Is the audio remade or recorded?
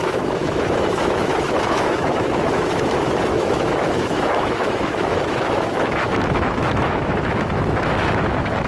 remade